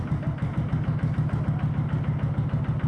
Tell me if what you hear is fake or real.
real